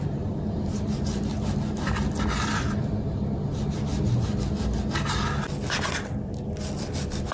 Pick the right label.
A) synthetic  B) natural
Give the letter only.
B